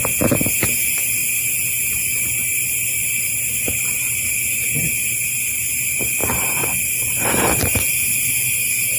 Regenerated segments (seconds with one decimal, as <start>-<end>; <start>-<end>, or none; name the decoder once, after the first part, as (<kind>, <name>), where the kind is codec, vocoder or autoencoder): 6.2-8.6 (vocoder, BigVGAN v2)